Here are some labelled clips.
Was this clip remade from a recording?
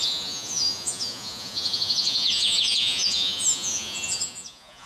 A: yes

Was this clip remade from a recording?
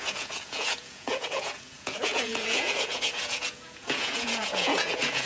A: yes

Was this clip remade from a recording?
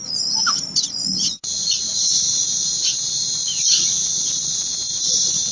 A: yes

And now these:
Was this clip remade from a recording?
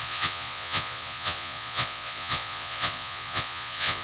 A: yes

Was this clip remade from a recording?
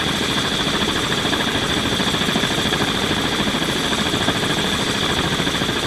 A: no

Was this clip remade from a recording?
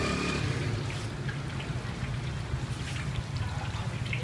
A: no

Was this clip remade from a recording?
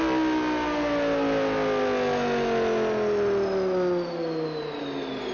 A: no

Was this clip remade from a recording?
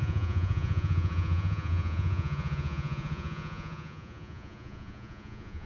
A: yes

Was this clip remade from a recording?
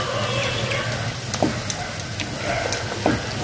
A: no